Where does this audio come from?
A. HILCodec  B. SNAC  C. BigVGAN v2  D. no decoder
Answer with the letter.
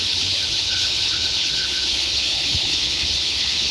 A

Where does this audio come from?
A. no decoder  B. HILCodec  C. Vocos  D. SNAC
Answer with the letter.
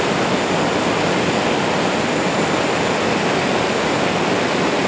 A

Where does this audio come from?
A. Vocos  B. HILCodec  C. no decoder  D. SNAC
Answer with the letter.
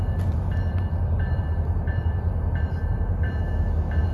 C